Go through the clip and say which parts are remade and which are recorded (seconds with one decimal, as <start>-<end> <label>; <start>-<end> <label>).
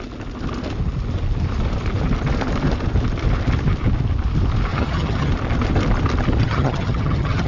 0.0-4.7 recorded; 4.7-5.3 remade; 5.3-6.4 recorded; 6.4-7.5 remade